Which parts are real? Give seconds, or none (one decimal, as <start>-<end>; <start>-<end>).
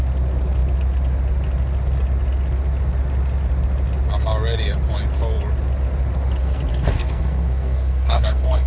0.0-6.4